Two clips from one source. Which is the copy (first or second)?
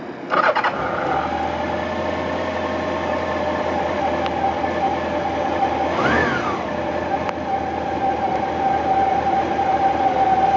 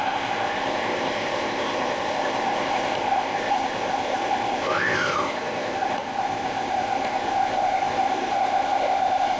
second